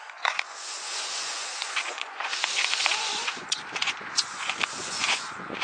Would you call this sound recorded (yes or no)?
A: no